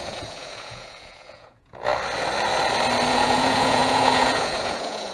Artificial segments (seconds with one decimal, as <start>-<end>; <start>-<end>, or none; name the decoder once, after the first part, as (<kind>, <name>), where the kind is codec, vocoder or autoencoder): 0.0-1.9 (vocoder, Vocos); 3.1-5.1